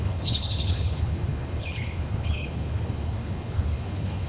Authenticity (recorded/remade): remade